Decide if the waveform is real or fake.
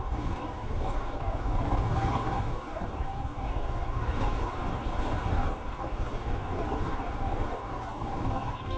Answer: fake